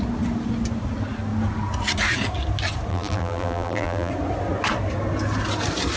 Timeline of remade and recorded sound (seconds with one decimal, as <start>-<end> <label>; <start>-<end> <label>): 0.0-2.9 recorded; 2.9-4.1 remade; 4.1-6.0 recorded

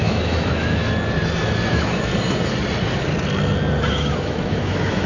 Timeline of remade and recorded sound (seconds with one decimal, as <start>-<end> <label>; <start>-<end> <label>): 0.0-0.8 remade; 0.8-1.7 recorded; 1.7-2.1 remade; 2.1-3.9 recorded; 3.9-5.1 remade

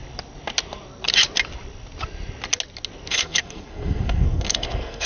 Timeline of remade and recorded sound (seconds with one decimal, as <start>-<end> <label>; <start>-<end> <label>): 0.0-3.1 recorded; 3.1-5.1 remade

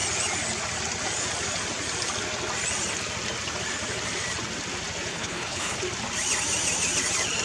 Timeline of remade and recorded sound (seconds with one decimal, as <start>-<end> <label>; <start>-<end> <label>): 0.0-5.1 recorded; 5.1-5.8 remade; 5.8-7.4 recorded

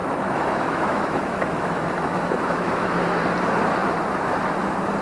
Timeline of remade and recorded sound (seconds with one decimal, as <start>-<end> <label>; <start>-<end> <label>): 0.0-3.0 remade; 3.0-5.0 recorded

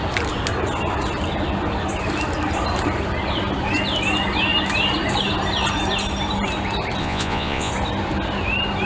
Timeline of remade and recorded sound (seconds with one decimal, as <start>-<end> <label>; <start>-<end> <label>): 0.0-7.0 recorded; 7.0-7.7 remade; 7.7-8.9 recorded